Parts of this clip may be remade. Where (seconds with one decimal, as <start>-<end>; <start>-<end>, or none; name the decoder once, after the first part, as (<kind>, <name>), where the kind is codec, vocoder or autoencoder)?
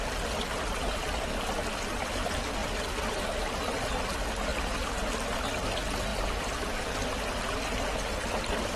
6.1-7.4 (vocoder, BigVGAN v2)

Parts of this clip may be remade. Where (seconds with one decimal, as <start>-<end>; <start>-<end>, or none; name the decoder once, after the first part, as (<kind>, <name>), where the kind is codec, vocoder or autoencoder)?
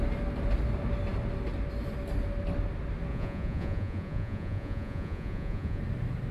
3.1-5.8 (vocoder, Vocos)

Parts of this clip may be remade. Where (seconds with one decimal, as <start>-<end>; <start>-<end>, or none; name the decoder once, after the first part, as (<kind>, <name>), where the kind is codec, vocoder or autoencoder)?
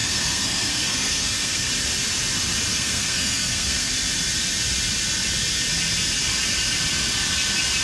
0.0-1.7 (codec, SNAC); 2.7-3.9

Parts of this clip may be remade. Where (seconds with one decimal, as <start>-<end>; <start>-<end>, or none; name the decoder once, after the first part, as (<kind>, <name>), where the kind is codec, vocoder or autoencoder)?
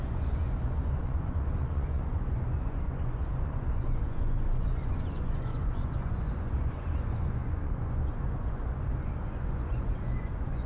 0.0-10.7 (vocoder, Vocos)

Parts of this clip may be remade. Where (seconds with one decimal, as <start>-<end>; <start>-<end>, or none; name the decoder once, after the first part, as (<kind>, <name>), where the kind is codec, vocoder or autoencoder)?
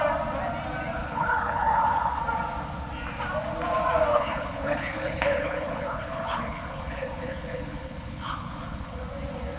1.0-2.2 (codec, HILCodec); 4.1-9.0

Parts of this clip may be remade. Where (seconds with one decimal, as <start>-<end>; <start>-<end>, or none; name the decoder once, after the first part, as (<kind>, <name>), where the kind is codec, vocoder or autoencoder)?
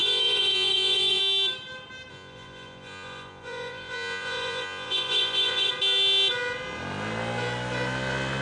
0.0-1.2 (vocoder, Vocos); 2.1-5.7